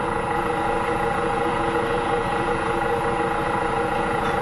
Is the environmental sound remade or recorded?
remade